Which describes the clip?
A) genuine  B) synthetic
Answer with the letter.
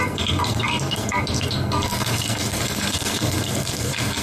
B